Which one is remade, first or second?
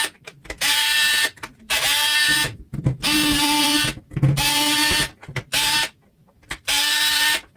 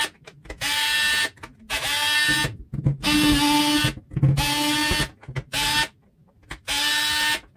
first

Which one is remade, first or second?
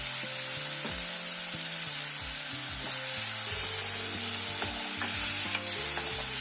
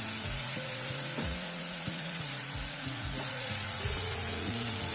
second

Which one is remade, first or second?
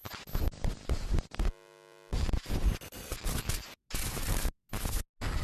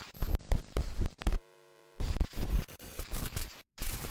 second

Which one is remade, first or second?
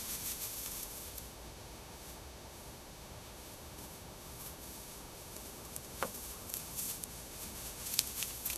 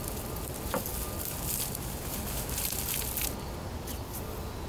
first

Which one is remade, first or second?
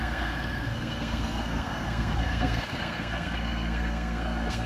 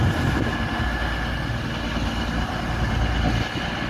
first